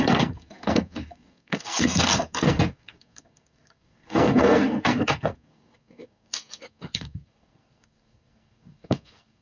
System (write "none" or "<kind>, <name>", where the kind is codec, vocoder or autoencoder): codec, SNAC